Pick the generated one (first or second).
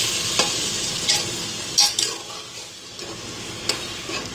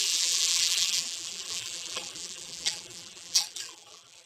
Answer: second